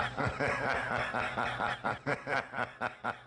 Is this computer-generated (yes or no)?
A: no